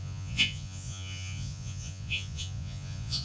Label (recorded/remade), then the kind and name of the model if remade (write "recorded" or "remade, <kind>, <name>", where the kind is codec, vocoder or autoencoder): remade, vocoder, Vocos